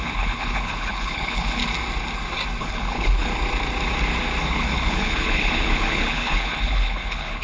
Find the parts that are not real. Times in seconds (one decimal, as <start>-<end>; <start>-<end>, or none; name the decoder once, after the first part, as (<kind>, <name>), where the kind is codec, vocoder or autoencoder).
0.0-1.6 (codec, HILCodec); 2.6-3.3; 4.5-7.4

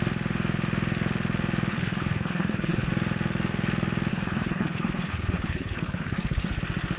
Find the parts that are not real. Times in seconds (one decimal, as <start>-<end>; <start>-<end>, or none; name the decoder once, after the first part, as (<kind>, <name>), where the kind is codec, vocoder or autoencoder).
1.7-2.9 (codec, HILCodec); 4.1-6.6